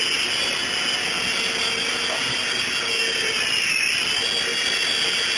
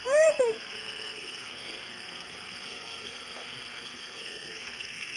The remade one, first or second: second